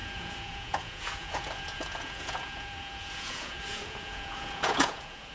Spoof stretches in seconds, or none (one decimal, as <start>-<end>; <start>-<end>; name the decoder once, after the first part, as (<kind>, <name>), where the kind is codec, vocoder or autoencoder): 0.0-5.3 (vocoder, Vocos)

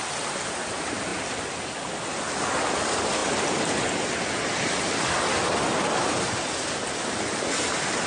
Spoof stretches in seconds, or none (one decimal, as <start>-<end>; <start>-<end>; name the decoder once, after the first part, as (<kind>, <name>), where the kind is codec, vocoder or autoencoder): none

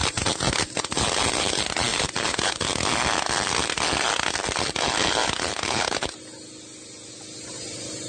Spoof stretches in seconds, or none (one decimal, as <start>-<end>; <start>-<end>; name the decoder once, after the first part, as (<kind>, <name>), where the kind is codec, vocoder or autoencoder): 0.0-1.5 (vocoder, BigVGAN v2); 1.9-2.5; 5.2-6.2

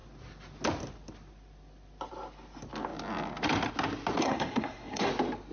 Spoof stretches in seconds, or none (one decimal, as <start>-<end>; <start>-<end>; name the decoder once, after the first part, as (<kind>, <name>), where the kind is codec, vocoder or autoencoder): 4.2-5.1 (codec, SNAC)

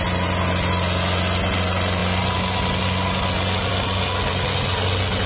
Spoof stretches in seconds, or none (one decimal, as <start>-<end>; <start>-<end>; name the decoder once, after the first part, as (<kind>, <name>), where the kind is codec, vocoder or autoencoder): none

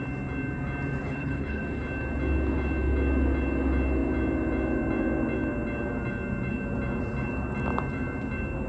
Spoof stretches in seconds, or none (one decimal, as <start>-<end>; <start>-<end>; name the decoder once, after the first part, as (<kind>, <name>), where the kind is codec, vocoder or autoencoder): 1.0-1.6 (codec, HILCodec)

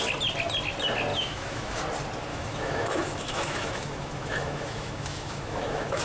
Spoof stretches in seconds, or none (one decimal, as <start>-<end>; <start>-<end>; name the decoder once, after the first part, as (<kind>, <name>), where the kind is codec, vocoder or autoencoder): 1.1-1.8 (autoencoder, DAC-VAE); 2.3-6.0